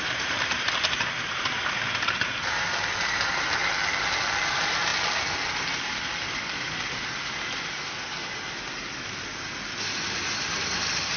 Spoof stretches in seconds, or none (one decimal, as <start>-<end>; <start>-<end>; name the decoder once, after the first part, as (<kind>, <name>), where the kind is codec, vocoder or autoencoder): 0.0-3.6 (vocoder, BigVGAN v2); 4.5-4.9; 9.9-11.2